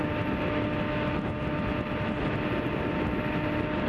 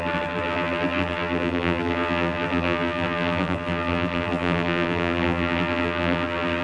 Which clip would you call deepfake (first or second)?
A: second